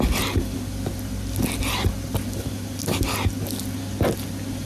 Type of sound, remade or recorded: recorded